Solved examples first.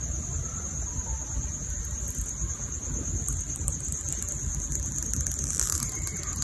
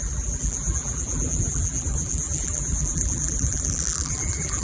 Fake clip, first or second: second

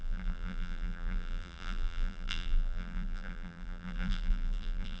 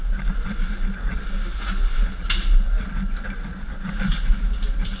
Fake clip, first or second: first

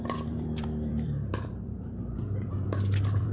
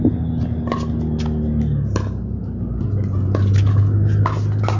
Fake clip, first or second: first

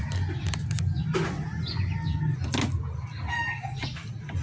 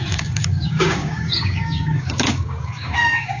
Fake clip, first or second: second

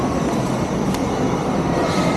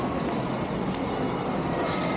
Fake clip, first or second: first